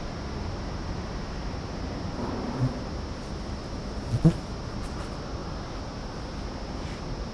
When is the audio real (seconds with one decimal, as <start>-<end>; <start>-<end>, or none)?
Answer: 0.0-7.3